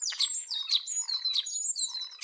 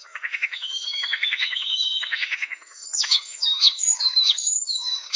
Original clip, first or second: first